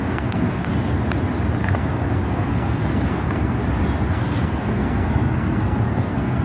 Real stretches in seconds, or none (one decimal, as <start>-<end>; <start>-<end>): 0.7-1.6; 3.6-4.1